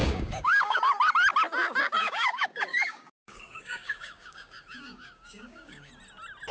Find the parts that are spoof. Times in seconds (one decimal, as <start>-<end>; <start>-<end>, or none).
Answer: 0.0-0.8; 2.0-5.9